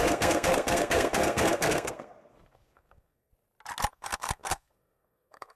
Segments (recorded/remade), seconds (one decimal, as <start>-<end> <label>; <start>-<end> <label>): 0.0-3.3 remade; 3.3-3.9 recorded; 3.9-5.6 remade